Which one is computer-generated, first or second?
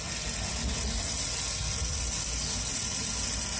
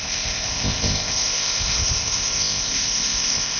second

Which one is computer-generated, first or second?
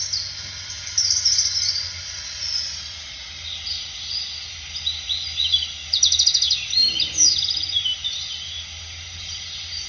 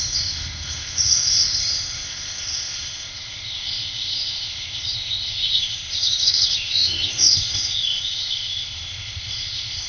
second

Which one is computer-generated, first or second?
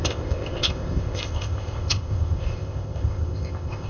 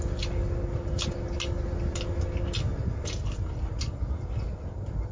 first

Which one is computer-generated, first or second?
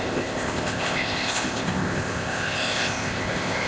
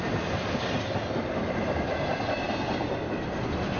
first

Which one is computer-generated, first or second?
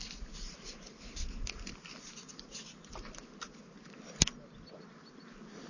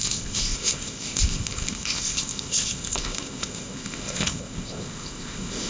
second